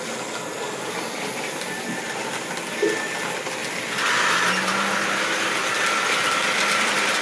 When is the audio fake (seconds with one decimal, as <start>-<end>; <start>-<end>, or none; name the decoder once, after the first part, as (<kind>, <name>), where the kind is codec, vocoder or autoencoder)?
none